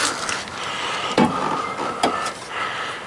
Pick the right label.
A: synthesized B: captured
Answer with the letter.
B